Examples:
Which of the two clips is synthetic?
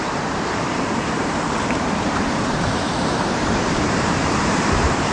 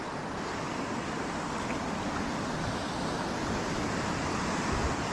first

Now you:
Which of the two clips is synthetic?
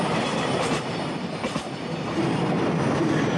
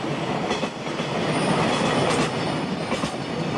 first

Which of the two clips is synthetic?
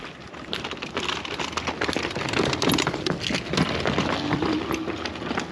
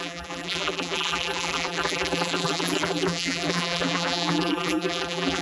second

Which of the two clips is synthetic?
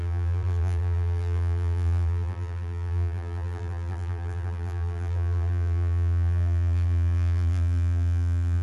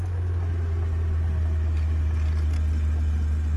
first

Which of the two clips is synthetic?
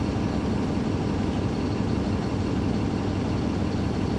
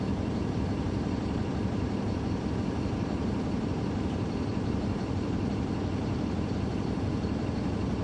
second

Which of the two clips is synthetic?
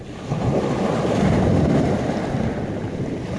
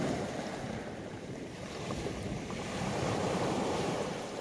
second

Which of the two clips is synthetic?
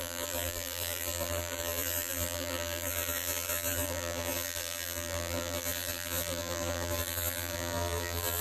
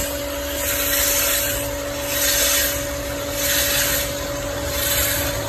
first